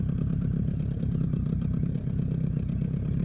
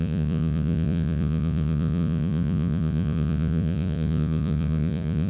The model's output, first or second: second